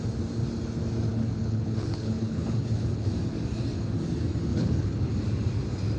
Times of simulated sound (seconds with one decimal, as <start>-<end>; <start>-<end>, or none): 1.1-3.1; 4.5-5.1